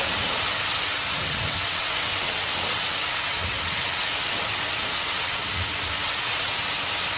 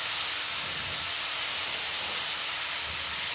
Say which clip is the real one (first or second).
second